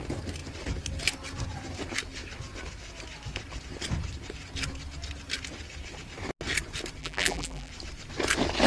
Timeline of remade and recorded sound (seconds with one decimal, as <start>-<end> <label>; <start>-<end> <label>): 0.0-7.0 recorded; 7.0-7.7 remade; 7.7-8.7 recorded